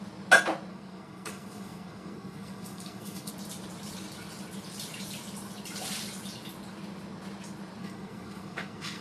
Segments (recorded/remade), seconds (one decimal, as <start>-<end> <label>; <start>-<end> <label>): 0.0-0.7 recorded; 0.7-3.3 remade; 3.3-7.8 recorded; 7.8-9.0 remade